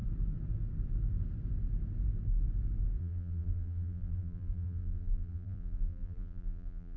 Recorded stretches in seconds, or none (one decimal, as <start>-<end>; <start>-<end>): 0.0-3.0